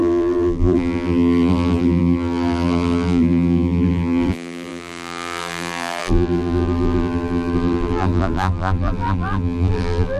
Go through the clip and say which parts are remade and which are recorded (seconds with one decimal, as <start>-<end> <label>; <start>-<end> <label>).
0.0-10.2 remade